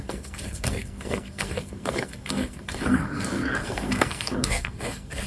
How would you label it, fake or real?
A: fake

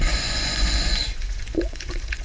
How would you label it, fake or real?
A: fake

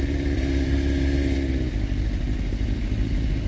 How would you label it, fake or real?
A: real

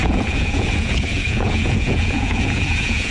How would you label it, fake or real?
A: fake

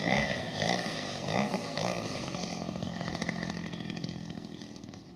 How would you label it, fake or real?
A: fake